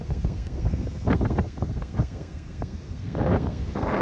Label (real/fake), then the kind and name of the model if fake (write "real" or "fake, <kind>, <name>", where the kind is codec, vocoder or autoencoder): fake, codec, SNAC